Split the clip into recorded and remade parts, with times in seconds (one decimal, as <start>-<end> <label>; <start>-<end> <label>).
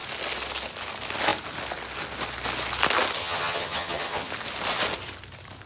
0.0-3.2 recorded; 3.2-4.3 remade; 4.3-5.7 recorded